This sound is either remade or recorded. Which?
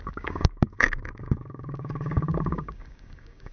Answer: remade